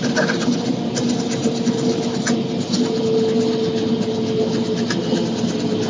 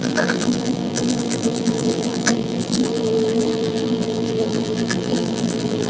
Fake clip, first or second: second